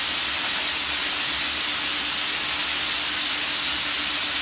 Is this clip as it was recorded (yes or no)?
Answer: yes